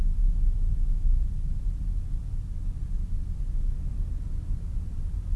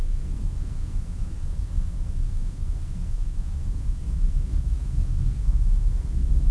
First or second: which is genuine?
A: first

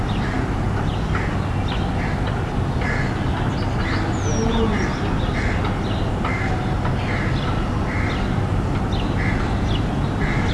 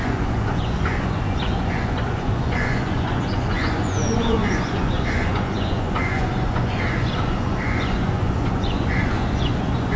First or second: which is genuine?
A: first